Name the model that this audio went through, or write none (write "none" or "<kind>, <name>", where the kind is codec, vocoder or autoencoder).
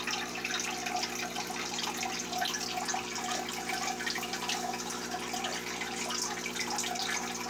none